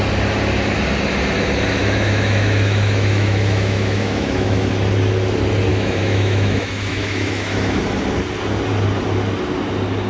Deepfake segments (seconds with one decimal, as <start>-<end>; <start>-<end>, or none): 1.8-4.7; 5.7-7.8